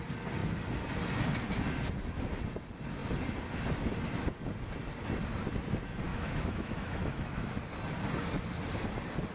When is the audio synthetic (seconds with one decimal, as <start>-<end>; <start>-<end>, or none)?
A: 6.1-7.6